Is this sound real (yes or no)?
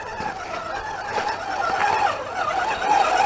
yes